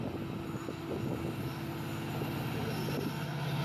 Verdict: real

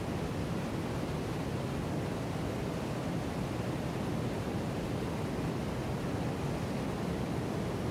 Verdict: real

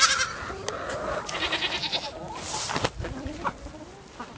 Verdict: real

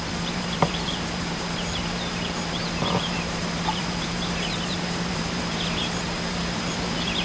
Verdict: fake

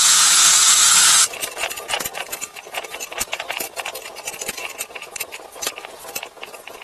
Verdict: fake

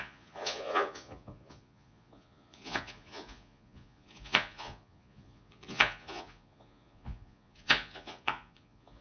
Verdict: fake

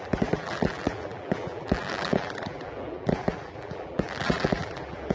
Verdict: fake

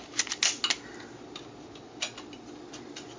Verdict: real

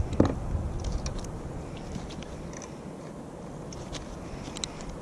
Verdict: real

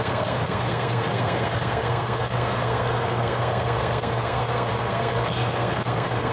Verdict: fake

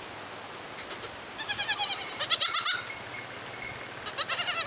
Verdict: real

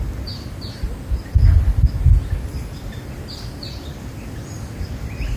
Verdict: real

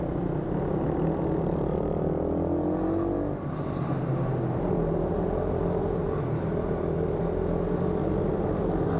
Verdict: real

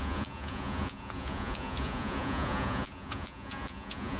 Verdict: fake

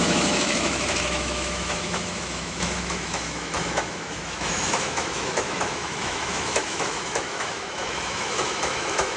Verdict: fake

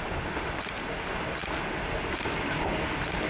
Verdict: real